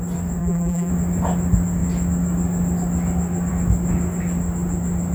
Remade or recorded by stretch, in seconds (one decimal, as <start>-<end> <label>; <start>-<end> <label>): 0.0-0.4 recorded; 0.4-0.9 remade; 0.9-5.1 recorded